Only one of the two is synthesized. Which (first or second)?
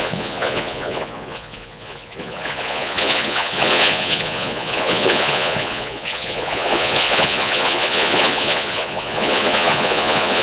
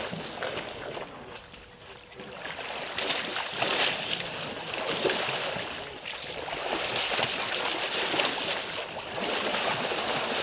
first